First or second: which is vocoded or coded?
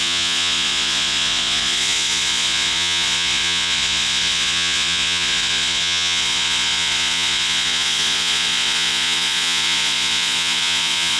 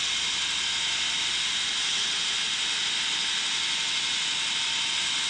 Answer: first